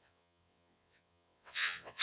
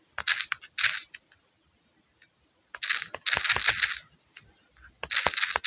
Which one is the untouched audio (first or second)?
second